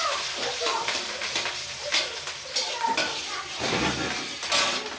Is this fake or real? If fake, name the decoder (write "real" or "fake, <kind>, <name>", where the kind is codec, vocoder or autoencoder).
fake, vocoder, BigVGAN v2